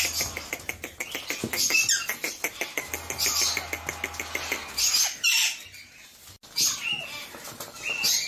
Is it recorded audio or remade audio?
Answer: recorded